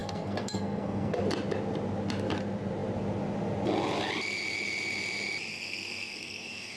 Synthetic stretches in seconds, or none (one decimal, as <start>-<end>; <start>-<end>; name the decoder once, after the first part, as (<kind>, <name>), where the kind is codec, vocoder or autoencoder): 0.0-1.2 (codec, SNAC); 5.5-6.8